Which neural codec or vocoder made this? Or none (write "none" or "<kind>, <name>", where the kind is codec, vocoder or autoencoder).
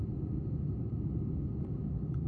none